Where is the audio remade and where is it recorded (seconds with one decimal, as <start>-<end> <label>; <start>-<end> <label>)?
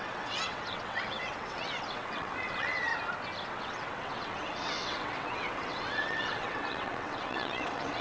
0.0-2.9 remade; 2.9-3.5 recorded; 3.5-8.0 remade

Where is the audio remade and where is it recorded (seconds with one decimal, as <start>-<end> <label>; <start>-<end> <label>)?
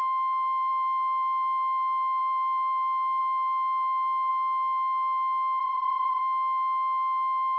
0.0-5.6 recorded; 5.6-6.2 remade; 6.2-7.6 recorded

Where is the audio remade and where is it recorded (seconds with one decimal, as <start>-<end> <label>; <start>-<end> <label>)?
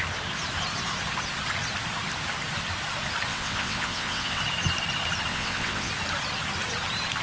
0.0-3.3 recorded; 3.3-4.4 remade; 4.4-5.3 recorded; 5.3-5.9 remade; 5.9-7.2 recorded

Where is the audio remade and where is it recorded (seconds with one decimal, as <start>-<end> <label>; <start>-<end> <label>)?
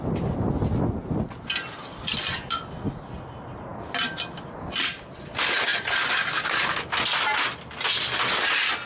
0.0-8.9 recorded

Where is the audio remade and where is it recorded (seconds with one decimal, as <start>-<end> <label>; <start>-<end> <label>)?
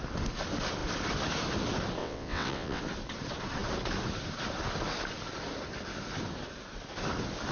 0.0-2.0 recorded; 2.0-2.8 remade; 2.8-7.5 recorded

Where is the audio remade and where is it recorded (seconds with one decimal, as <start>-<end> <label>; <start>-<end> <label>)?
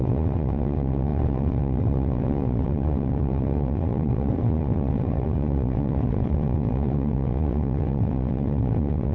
0.0-9.1 remade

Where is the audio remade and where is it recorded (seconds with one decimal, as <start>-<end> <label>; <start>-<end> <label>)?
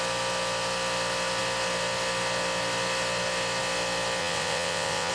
0.0-4.2 recorded; 4.2-5.1 remade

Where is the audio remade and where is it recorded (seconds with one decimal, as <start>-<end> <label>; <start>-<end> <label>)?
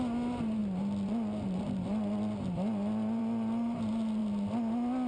0.0-5.1 recorded